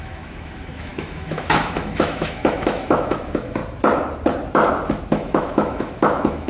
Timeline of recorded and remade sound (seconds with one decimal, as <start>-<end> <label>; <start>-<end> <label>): 0.0-3.6 remade; 3.6-5.0 recorded; 5.0-6.5 remade